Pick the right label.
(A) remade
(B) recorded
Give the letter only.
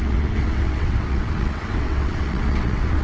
A